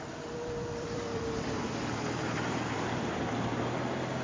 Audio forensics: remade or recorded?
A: remade